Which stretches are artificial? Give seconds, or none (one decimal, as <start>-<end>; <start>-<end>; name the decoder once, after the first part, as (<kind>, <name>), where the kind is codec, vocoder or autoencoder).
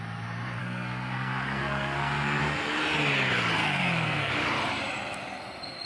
0.6-2.4 (codec, SNAC); 3.6-4.3